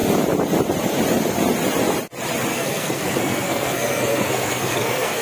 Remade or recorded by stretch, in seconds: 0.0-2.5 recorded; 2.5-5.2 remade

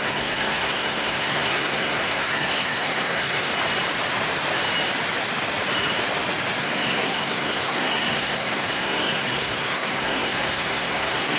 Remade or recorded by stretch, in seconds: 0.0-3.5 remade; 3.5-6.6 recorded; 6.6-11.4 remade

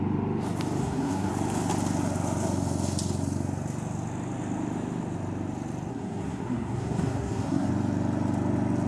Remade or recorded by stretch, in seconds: 0.0-0.8 recorded; 0.8-1.3 remade; 1.3-5.9 recorded; 5.9-7.7 remade; 7.7-8.9 recorded